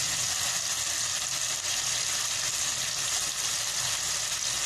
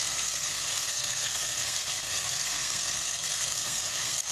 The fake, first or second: second